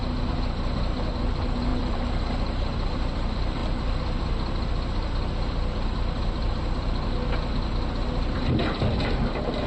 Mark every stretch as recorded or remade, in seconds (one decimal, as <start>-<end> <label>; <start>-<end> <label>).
0.0-1.7 recorded; 1.7-3.0 remade; 3.0-9.7 recorded